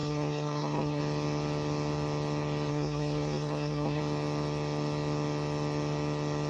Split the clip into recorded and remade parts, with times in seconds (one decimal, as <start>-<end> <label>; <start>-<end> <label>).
0.0-1.0 remade; 1.0-2.7 recorded; 2.7-4.0 remade; 4.0-6.5 recorded